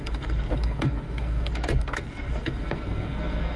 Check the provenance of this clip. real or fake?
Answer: fake